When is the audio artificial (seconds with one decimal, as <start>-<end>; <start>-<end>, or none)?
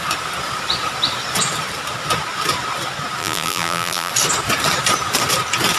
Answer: 3.2-4.1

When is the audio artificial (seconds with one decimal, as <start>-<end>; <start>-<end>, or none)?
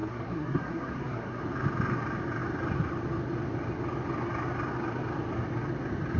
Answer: 0.0-1.4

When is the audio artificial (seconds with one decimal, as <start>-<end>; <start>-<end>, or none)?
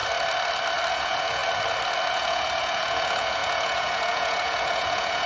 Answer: 0.9-1.4; 2.1-5.3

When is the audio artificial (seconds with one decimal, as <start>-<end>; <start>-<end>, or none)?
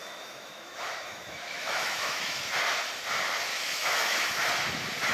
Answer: 0.0-2.5; 3.5-4.5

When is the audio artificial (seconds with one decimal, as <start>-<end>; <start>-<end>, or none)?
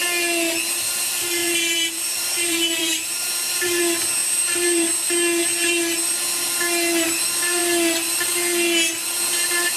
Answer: 1.4-3.8; 4.2-5.1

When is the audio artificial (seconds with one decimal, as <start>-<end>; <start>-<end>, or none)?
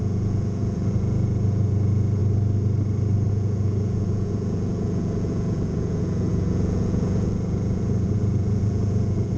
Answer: 0.0-2.2; 3.3-9.4